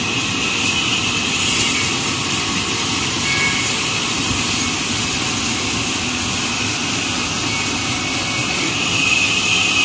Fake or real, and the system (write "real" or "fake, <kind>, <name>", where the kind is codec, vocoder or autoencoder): real